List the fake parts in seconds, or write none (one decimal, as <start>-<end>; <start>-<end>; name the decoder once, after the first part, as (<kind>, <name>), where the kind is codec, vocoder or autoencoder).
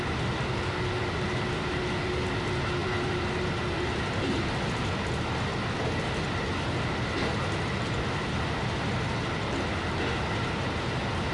none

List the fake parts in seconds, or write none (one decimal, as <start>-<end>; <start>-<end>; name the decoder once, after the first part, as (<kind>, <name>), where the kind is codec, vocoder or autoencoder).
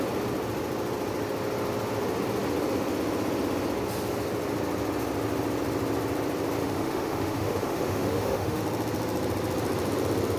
6.6-8.6 (autoencoder, DAC-VAE)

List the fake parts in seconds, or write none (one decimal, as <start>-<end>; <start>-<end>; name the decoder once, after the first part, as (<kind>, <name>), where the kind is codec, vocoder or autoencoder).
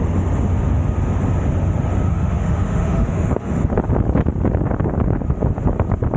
2.1-3.7 (autoencoder, DAC-VAE)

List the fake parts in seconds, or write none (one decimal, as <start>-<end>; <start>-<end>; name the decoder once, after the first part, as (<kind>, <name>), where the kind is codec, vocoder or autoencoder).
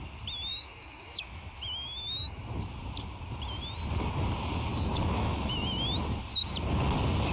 0.5-2.6 (autoencoder, DAC-VAE); 4.7-5.8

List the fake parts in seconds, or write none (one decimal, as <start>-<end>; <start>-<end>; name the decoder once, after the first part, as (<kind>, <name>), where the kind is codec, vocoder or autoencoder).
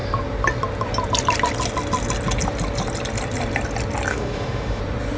4.1-4.8 (autoencoder, DAC-VAE)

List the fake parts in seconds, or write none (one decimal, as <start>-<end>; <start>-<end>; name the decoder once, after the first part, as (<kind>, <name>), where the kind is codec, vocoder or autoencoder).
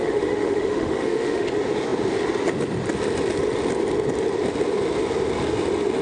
0.0-1.5 (autoencoder, DAC-VAE)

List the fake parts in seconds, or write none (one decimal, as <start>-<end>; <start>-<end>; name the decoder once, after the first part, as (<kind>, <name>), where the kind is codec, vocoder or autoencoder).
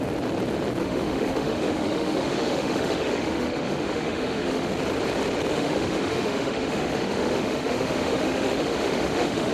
0.8-4.7 (autoencoder, DAC-VAE); 5.5-9.5